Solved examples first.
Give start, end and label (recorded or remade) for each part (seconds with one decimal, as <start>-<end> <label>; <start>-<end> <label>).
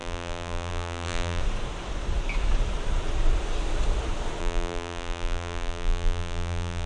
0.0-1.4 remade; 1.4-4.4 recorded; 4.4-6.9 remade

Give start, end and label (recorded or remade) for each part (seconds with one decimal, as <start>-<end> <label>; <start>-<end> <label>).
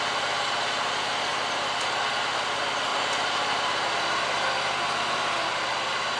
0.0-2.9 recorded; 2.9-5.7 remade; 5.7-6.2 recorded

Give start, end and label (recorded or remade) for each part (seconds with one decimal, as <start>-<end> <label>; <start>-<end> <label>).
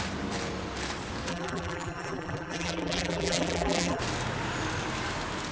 0.0-1.3 recorded; 1.3-4.0 remade; 4.0-5.5 recorded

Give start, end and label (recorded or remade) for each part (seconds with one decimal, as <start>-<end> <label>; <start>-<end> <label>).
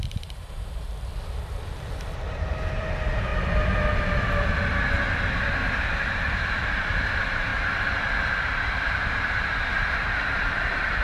0.0-1.1 remade; 1.1-2.8 recorded; 2.8-3.3 remade; 3.3-5.3 recorded; 5.3-7.5 remade; 7.5-8.4 recorded; 8.4-11.0 remade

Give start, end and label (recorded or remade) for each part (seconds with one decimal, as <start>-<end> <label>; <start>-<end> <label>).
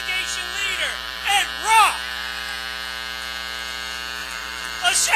0.0-0.6 recorded; 0.6-1.5 remade; 1.5-4.2 recorded; 4.2-4.8 remade; 4.8-5.2 recorded